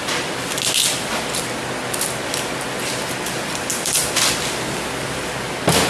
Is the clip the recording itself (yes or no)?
yes